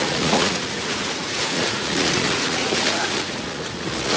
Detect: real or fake fake